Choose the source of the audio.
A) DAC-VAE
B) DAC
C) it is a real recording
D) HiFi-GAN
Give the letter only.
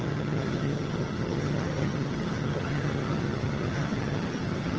D